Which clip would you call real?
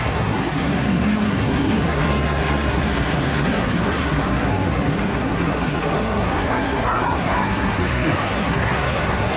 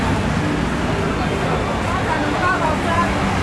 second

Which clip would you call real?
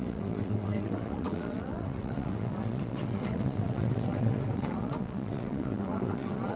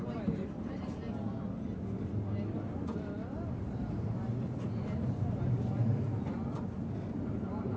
second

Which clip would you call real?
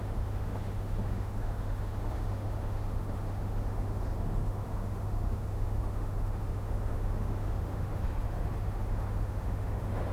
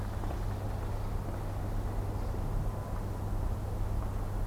second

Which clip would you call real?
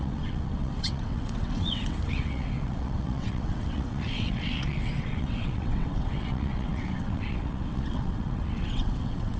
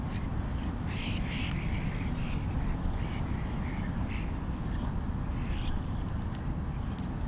second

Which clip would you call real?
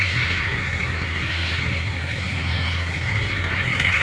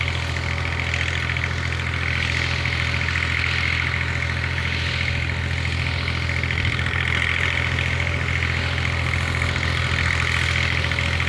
second